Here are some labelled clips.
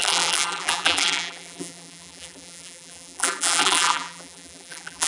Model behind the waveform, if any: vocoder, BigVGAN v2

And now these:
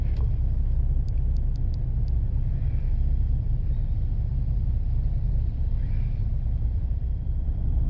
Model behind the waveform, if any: vocoder, BigVGAN v2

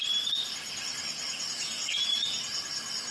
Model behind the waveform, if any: none